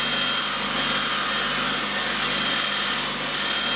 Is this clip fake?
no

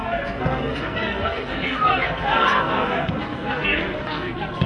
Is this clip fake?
yes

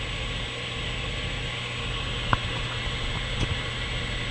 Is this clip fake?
no